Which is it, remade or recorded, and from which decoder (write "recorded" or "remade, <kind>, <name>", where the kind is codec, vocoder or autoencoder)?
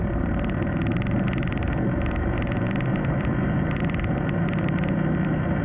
remade, vocoder, BigVGAN v2